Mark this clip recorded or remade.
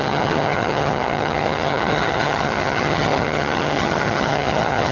remade